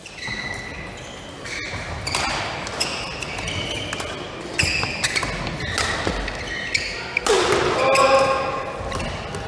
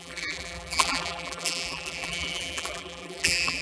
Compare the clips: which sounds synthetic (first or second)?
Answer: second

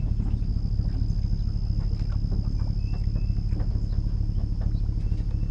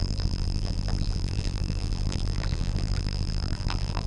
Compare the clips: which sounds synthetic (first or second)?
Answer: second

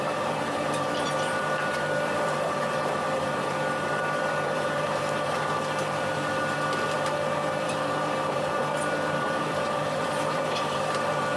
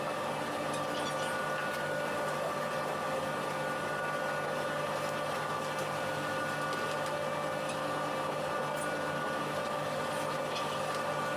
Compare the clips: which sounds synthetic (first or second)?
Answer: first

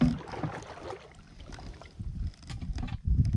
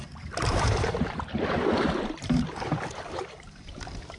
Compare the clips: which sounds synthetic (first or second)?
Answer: second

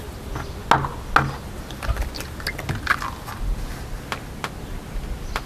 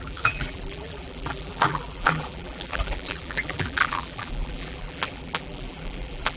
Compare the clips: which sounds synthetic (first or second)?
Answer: second